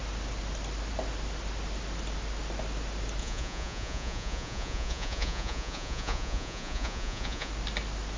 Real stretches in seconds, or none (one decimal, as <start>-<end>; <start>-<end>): 0.0-3.2; 7.5-8.2